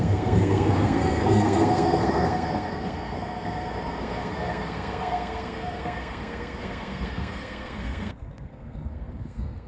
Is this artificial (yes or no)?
yes